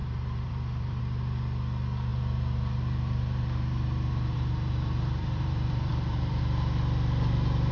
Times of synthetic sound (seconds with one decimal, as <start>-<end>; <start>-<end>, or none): 0.0-1.0; 2.1-6.4